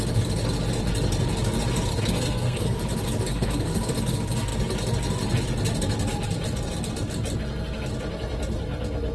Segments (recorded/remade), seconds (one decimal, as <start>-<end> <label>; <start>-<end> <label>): 0.0-1.9 recorded; 1.9-2.8 remade; 2.8-3.3 recorded; 3.3-3.9 remade; 3.9-9.1 recorded

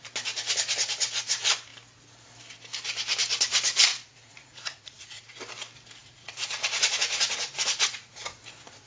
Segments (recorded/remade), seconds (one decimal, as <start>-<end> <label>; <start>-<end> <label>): 0.0-3.9 recorded; 3.9-5.4 remade; 5.4-6.0 recorded; 6.0-8.9 remade